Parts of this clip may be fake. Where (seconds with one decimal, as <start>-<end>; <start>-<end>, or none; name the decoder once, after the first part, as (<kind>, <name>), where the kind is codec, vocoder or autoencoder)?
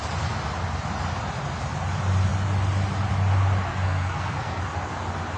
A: 3.7-4.6 (codec, SNAC)